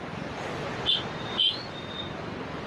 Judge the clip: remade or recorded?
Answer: recorded